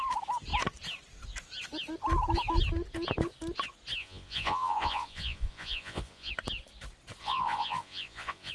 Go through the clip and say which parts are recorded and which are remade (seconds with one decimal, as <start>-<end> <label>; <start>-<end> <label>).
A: 0.0-4.0 recorded; 4.0-6.3 remade; 6.3-7.2 recorded; 7.2-8.5 remade